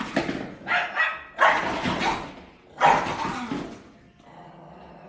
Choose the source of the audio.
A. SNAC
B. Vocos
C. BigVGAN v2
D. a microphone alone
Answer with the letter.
D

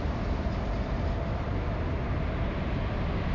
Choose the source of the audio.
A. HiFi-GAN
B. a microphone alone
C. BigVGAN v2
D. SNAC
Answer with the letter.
B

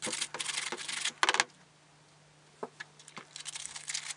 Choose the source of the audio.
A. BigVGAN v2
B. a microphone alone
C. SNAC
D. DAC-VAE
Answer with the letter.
B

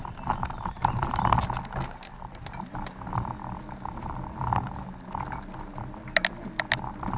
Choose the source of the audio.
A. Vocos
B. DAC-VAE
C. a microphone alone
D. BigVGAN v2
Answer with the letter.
C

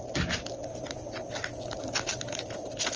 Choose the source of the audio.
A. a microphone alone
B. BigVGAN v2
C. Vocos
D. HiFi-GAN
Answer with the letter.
A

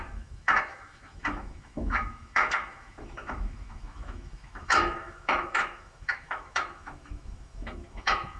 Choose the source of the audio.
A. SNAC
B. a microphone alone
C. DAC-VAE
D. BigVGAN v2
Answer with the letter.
C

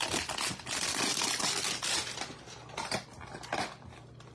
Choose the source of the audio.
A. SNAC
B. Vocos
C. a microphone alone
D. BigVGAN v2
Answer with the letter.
C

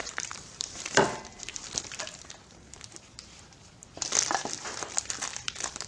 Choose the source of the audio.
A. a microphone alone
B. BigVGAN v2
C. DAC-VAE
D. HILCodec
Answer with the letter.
B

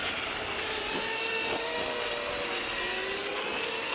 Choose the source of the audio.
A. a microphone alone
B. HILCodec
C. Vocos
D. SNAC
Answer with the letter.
A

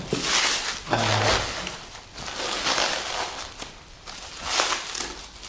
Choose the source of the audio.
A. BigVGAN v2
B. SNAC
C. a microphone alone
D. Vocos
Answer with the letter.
C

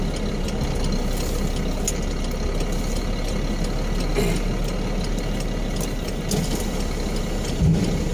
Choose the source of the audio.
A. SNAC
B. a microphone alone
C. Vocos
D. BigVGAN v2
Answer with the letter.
B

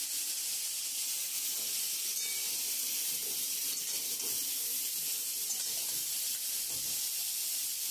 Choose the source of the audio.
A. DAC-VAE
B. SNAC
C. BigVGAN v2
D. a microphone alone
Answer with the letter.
D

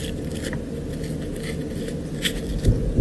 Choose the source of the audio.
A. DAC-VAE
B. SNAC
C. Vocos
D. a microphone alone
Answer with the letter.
D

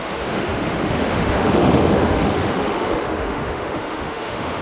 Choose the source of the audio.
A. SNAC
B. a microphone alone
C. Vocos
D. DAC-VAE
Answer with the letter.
D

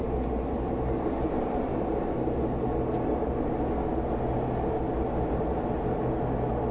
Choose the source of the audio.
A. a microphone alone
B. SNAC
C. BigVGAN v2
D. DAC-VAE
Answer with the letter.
A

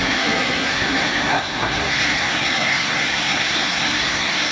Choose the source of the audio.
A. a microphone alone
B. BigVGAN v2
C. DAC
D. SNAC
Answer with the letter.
D